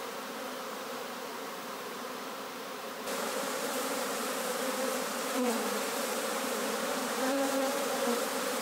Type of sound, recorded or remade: remade